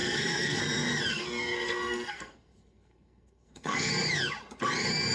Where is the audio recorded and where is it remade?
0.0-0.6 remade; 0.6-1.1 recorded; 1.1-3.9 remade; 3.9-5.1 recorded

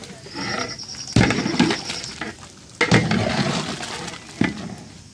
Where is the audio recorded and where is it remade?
0.0-5.1 recorded